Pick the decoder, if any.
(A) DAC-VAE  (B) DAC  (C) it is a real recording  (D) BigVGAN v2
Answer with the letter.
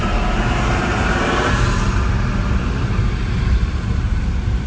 D